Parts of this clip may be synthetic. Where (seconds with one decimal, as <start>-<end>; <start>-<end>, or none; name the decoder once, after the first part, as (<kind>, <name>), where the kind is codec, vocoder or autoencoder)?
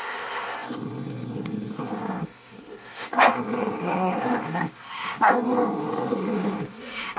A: 0.0-7.2 (codec, SNAC)